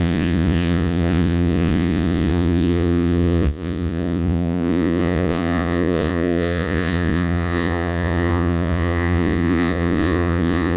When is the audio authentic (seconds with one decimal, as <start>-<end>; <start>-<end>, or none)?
none

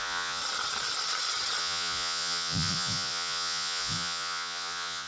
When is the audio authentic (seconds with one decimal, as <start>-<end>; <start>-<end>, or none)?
0.4-1.6

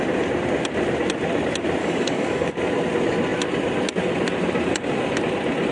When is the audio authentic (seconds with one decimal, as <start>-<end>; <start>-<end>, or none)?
0.0-1.8; 2.5-5.7

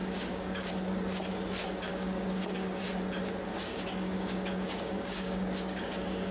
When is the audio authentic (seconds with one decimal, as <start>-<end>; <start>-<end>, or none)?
0.7-1.9; 2.8-3.5